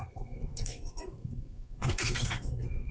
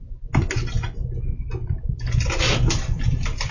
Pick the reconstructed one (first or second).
first